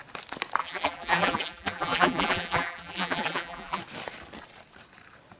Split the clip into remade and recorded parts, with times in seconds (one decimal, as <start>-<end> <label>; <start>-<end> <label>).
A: 0.0-0.6 recorded; 0.6-3.8 remade; 3.8-5.4 recorded